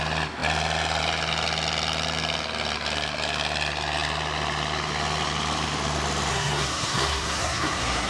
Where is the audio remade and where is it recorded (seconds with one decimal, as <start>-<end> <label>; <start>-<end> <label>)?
0.0-6.3 recorded; 6.3-8.1 remade